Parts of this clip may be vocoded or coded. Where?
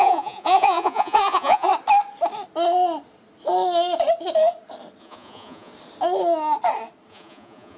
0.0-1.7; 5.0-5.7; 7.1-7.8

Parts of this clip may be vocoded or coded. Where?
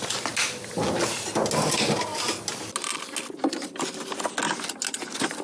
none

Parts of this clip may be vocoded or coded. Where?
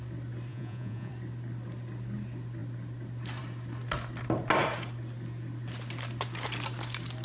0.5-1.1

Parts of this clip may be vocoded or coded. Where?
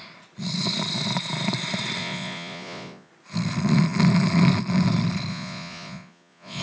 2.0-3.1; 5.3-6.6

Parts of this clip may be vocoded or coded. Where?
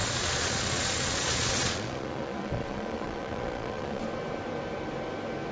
0.0-4.0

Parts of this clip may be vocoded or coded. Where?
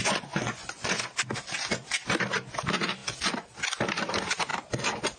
0.0-1.1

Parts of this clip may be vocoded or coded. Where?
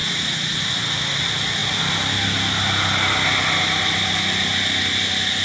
0.0-0.6